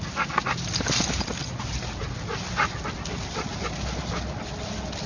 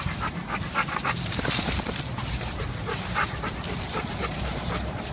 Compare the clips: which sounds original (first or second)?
first